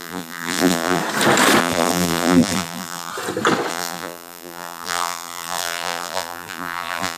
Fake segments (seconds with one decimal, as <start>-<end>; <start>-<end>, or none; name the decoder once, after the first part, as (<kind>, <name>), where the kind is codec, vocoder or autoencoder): 0.0-1.0 (vocoder, BigVGAN v2); 1.6-3.1; 3.7-7.2